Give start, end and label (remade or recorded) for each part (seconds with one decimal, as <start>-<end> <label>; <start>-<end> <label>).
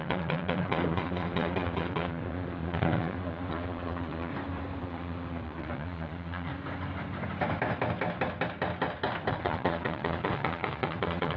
0.0-4.3 remade; 4.3-4.8 recorded; 4.8-6.5 remade; 6.5-9.3 recorded; 9.3-11.4 remade